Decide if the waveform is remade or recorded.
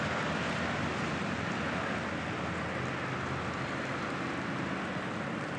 recorded